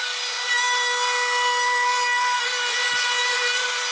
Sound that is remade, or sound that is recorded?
recorded